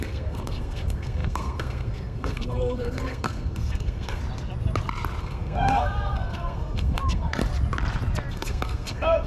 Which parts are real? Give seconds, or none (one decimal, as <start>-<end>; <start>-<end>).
4.2-5.2; 7.4-8.3